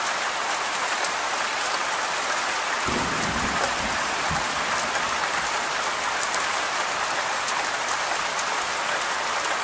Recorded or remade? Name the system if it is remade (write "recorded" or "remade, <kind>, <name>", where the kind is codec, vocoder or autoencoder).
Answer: recorded